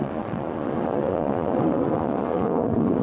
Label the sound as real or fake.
fake